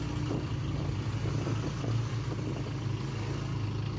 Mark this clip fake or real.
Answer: real